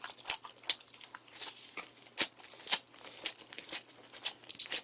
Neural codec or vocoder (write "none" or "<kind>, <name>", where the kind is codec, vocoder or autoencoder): none